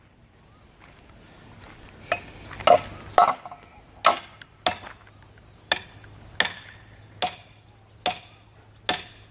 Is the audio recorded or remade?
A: recorded